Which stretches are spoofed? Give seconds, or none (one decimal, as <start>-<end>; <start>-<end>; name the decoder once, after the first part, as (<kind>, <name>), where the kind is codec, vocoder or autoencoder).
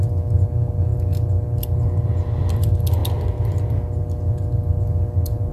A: none